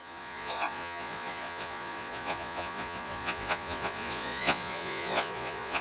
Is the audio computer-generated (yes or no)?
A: yes